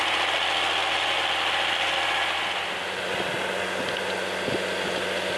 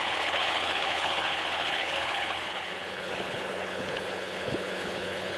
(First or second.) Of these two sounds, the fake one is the second